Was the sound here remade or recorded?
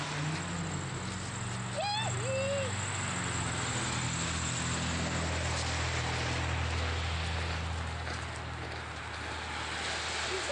recorded